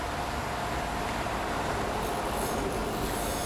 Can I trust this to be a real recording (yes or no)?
yes